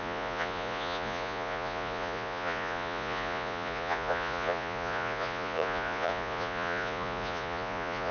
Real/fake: fake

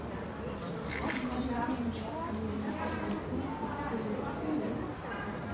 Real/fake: real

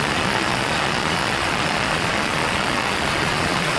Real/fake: fake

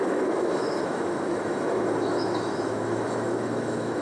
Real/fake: fake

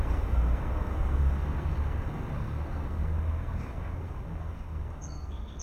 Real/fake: fake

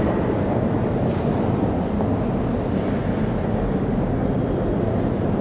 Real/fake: real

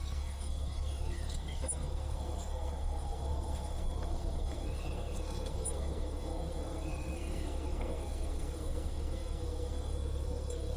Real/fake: fake